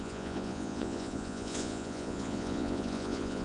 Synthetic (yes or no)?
yes